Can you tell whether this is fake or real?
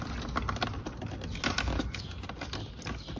real